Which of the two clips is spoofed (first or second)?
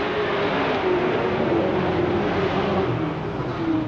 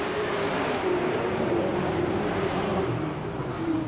second